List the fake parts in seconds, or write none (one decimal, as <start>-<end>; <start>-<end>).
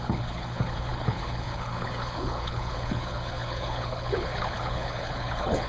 0.0-5.7